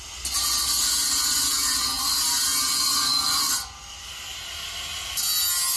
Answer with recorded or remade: recorded